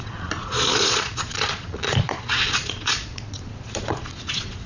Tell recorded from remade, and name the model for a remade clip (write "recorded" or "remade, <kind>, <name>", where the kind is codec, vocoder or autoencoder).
remade, vocoder, Vocos